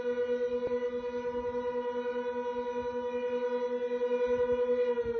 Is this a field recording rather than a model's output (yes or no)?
yes